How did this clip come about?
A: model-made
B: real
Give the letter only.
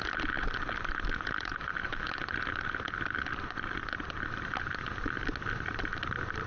B